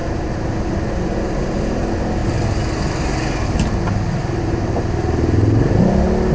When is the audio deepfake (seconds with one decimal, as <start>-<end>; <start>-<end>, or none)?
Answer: none